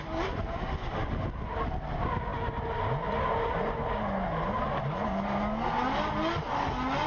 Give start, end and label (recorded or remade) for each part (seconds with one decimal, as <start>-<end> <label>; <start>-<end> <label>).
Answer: 0.0-7.1 recorded